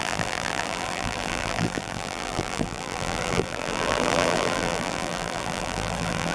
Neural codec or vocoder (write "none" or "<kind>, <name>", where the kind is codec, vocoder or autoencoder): vocoder, BigVGAN v2